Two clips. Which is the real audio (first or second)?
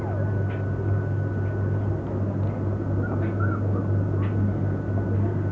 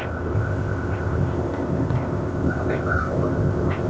first